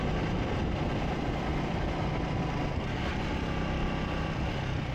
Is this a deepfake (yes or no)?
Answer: no